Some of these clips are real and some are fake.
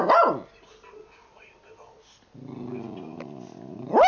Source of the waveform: real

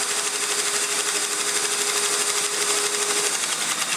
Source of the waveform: real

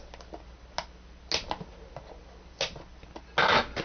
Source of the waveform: real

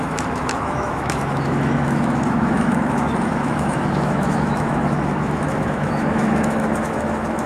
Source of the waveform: fake